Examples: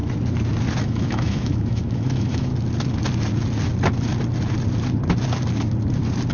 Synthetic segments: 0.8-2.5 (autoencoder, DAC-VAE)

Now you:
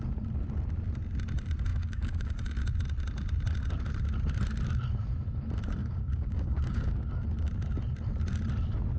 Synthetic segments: 1.7-2.3 (codec, DAC); 5.8-7.1

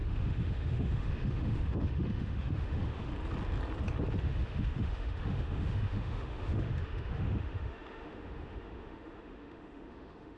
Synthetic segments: 0.0-3.1 (autoencoder, DAC-VAE); 4.2-10.4

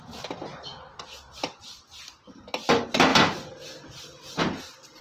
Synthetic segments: none